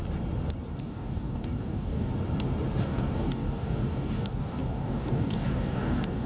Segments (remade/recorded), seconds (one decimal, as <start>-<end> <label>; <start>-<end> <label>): 0.0-0.8 recorded; 0.8-2.1 remade; 2.1-2.8 recorded; 2.8-6.3 remade